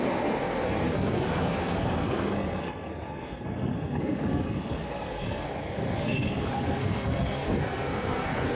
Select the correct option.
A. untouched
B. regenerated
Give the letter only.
B